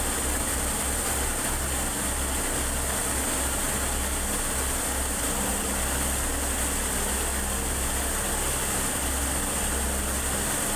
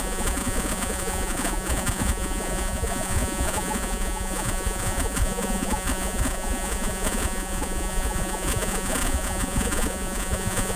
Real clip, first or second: first